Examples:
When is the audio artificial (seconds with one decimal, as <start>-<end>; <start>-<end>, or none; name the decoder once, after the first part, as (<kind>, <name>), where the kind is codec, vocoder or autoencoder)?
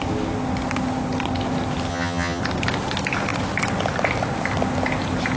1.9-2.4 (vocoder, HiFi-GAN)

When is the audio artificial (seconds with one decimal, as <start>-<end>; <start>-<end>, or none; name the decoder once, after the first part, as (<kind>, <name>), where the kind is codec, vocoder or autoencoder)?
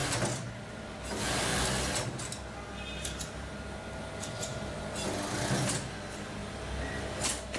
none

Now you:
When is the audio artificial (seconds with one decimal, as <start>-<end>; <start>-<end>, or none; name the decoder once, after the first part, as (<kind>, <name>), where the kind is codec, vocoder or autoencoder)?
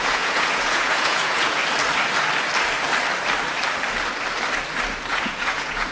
0.0-1.6 (vocoder, Vocos); 5.1-5.9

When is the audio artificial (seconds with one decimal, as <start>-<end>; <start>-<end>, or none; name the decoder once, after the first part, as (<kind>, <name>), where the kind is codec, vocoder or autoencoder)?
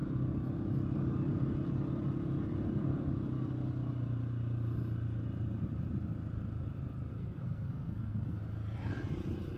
7.1-8.4 (codec, SNAC)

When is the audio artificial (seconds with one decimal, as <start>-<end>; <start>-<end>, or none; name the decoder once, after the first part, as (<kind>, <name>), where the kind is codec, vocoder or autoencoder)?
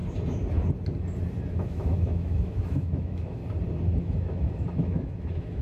1.5-3.4 (autoencoder, DAC-VAE); 4.0-5.6